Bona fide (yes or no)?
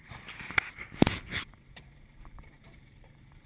no